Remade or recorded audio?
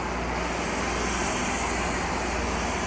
recorded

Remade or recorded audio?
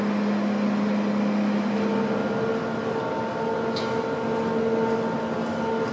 recorded